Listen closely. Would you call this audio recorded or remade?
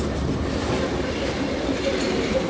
recorded